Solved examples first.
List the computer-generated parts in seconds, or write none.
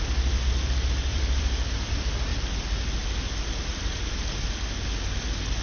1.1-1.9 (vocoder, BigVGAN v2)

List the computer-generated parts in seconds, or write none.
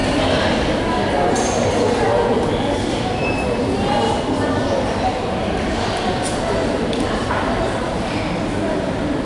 2.3-7.6 (vocoder, BigVGAN v2)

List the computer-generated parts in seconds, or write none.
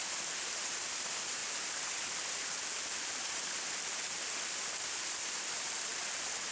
0.7-1.4 (vocoder, BigVGAN v2); 5.3-5.9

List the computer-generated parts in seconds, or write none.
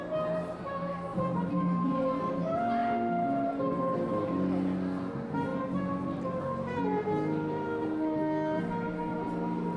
1.1-2.3 (vocoder, BigVGAN v2); 5.5-6.4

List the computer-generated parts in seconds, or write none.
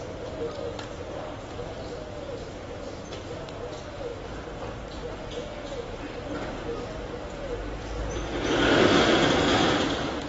none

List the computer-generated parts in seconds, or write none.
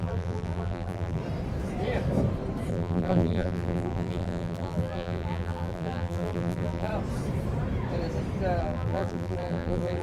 0.0-1.2 (vocoder, BigVGAN v2); 2.7-6.9; 8.6-10.0